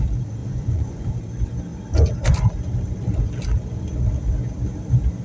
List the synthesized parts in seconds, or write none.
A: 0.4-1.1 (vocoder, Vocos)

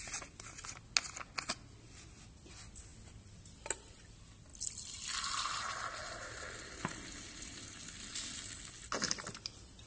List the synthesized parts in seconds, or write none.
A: none

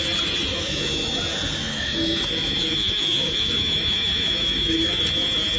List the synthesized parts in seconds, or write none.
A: 0.5-1.2 (autoencoder, DAC-VAE); 1.6-5.0

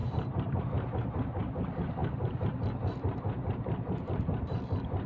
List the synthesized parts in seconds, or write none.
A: 0.0-0.6 (vocoder, BigVGAN v2); 2.0-5.1

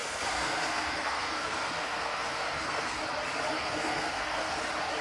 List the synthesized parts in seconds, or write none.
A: 0.0-3.0 (codec, SNAC); 3.5-4.6

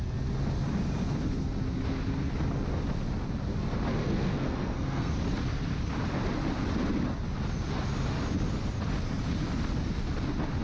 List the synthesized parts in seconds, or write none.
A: 4.0-5.1 (codec, SNAC)

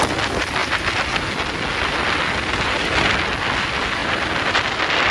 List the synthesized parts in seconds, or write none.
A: none